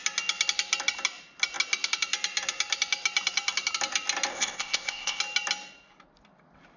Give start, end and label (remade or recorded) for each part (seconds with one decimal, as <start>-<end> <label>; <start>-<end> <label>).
0.0-4.3 recorded; 4.3-5.2 remade; 5.2-6.8 recorded